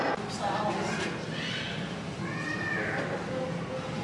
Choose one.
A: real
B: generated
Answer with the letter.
A